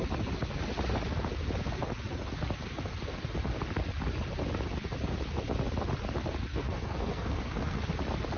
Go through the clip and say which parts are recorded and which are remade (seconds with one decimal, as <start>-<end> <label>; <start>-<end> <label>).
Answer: 0.0-6.5 recorded; 6.5-7.9 remade; 7.9-8.4 recorded